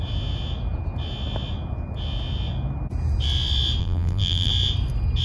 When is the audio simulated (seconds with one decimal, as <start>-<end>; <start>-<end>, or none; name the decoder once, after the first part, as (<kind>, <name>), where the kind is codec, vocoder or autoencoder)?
3.8-4.5 (vocoder, BigVGAN v2)